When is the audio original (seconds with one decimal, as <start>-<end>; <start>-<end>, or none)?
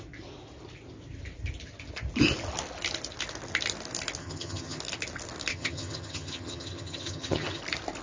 0.0-4.2; 4.8-5.5; 7.6-8.0